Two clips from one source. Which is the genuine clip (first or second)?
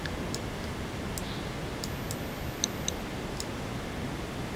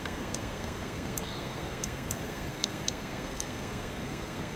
first